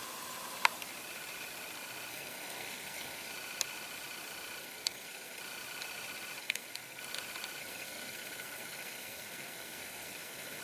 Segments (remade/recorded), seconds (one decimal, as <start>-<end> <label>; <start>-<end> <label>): 0.0-2.1 recorded; 2.1-3.3 remade; 3.3-4.6 recorded; 4.6-5.4 remade; 5.4-6.4 recorded; 6.4-7.0 remade; 7.0-7.6 recorded; 7.6-10.6 remade